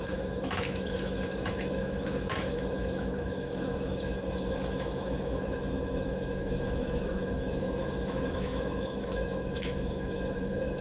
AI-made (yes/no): yes